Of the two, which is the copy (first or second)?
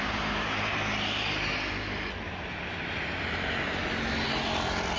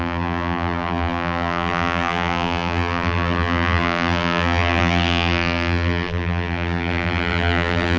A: second